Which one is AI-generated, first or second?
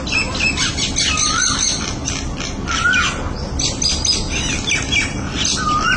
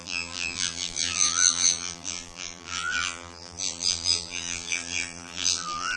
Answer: second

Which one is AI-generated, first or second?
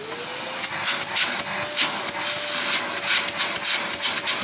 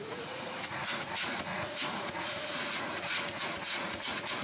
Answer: second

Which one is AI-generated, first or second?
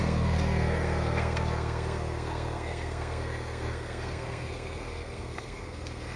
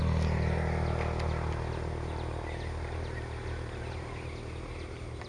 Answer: first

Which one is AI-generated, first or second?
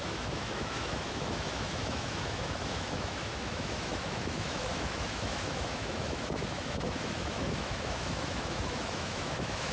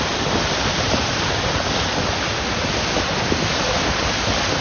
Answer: first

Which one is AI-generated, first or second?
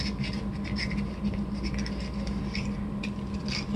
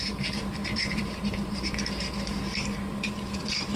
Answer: second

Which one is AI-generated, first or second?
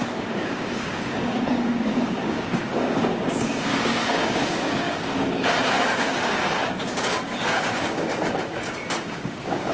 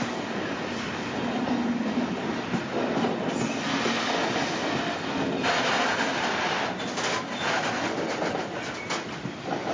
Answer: first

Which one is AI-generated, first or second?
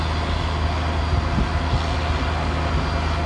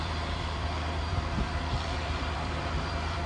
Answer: second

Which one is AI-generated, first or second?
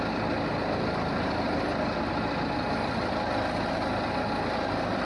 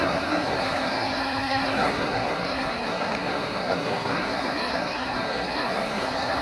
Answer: second